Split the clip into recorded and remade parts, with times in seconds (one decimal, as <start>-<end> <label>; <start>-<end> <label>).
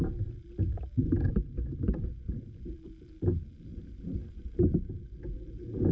0.0-3.7 recorded; 3.7-4.9 remade; 4.9-5.9 recorded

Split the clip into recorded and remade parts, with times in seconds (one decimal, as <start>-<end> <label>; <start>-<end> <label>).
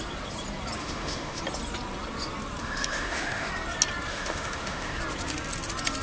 0.0-0.8 recorded; 0.8-1.4 remade; 1.4-2.6 recorded; 2.6-3.5 remade; 3.5-4.1 recorded; 4.1-5.0 remade; 5.0-6.0 recorded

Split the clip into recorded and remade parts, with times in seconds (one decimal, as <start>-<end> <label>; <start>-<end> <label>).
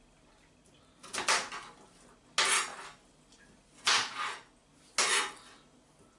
0.0-6.2 recorded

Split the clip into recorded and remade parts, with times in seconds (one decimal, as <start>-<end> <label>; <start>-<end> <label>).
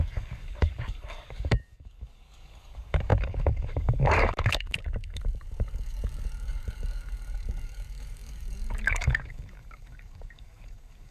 0.0-11.1 remade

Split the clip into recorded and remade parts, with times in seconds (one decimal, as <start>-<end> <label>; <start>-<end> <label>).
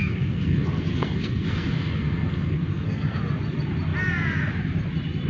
0.0-3.2 remade; 3.2-5.3 recorded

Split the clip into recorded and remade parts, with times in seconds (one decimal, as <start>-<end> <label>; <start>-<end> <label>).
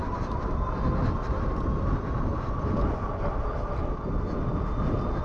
0.0-5.2 recorded